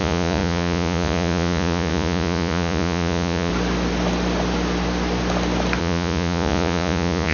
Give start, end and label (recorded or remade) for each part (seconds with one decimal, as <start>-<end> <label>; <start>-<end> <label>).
0.0-3.5 remade; 3.5-5.8 recorded; 5.8-7.3 remade